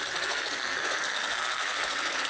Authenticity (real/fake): fake